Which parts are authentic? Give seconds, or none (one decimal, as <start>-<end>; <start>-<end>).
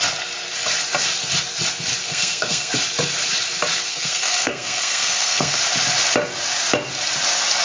0.0-2.0; 2.7-3.9; 5.6-7.6